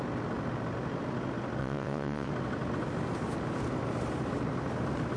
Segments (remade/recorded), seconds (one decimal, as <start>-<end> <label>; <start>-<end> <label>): 0.0-1.6 recorded; 1.6-2.3 remade; 2.3-5.2 recorded